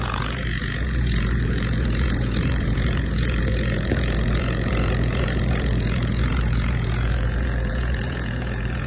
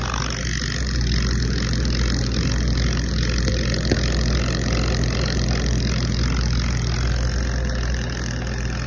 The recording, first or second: second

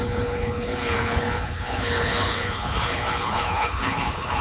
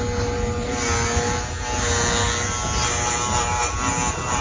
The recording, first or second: second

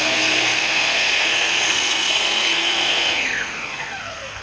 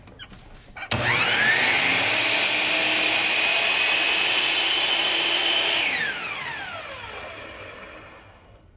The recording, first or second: second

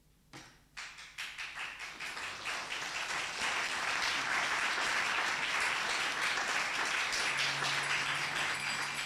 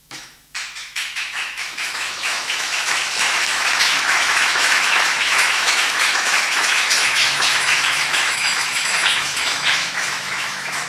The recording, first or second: first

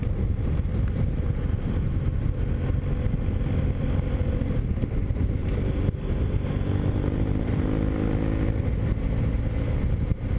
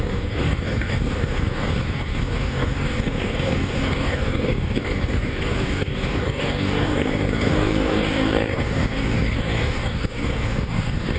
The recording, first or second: first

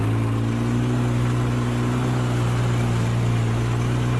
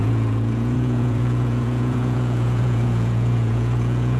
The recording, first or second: first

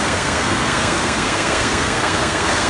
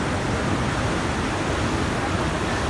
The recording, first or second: second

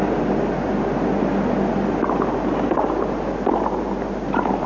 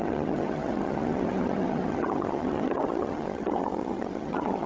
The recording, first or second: first